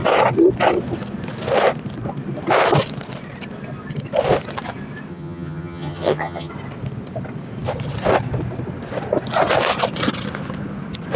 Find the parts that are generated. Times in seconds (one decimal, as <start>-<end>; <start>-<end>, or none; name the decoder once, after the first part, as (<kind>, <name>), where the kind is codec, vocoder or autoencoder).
5.1-6.5 (vocoder, HiFi-GAN)